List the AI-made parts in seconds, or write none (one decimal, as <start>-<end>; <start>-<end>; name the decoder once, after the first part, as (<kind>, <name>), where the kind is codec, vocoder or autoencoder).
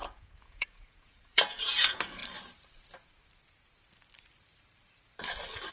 0.0-2.2 (vocoder, Vocos)